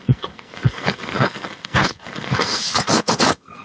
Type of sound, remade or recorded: remade